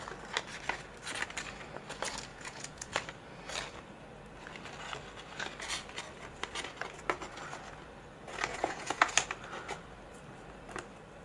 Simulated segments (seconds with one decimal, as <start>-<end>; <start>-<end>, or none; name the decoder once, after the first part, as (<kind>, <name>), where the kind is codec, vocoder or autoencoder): 2.3-2.9 (vocoder, Vocos); 8.5-9.1